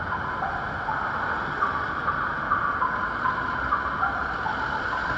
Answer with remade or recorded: recorded